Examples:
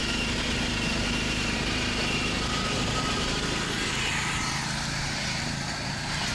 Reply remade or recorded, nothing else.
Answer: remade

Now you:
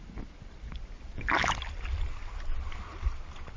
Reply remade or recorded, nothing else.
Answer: recorded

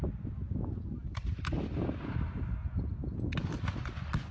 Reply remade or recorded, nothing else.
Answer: recorded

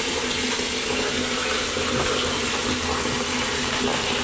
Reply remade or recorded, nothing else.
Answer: recorded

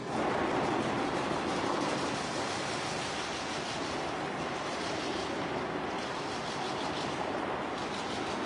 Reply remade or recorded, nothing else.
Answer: recorded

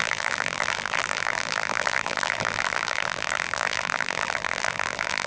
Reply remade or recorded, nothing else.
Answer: remade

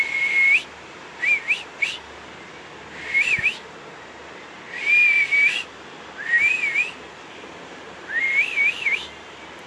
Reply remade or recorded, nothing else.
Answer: recorded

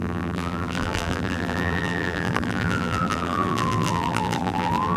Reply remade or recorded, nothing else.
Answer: remade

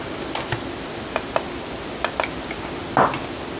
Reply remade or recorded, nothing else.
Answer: recorded